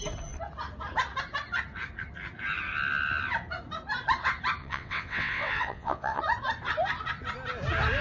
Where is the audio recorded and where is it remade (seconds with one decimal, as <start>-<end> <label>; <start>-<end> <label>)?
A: 0.0-4.6 recorded; 4.6-6.2 remade; 6.2-8.0 recorded